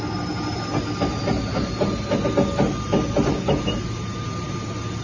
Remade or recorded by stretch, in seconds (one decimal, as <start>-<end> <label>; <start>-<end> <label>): 0.0-5.0 recorded